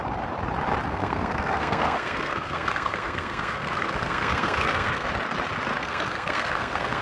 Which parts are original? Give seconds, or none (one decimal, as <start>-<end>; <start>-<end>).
0.0-0.9; 5.1-5.7